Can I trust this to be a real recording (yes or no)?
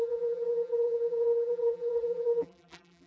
no